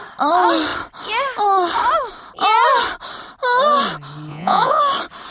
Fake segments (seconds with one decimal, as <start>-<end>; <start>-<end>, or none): 4.3-4.8